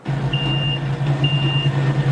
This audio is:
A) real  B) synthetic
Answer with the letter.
A